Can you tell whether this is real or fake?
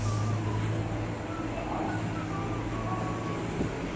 real